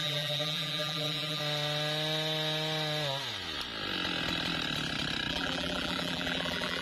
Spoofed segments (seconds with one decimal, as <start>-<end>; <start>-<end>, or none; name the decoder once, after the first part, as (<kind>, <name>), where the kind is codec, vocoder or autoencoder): 0.0-1.4 (vocoder, BigVGAN v2); 5.3-6.8